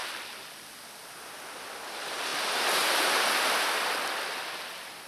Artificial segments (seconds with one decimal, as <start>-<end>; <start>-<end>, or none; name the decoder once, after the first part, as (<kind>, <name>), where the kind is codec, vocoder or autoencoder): none